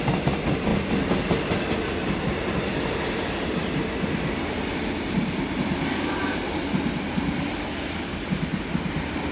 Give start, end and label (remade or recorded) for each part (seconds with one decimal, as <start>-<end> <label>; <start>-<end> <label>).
0.0-9.3 recorded